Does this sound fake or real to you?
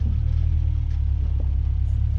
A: real